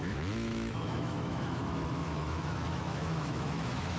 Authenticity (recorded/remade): remade